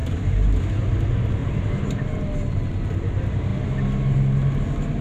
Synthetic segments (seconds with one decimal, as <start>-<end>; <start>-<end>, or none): 0.0-0.6; 1.4-2.1

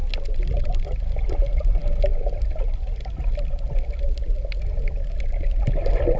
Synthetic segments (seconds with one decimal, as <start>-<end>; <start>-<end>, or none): none

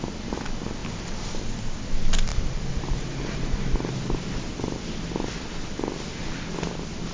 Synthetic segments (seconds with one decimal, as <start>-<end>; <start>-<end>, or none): 2.3-4.5

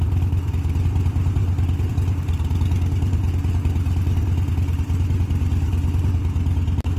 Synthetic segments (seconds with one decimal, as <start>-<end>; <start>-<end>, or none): none